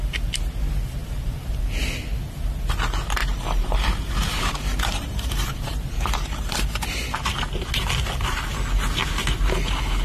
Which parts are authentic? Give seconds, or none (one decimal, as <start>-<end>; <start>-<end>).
0.0-1.0; 1.6-3.2; 7.7-10.0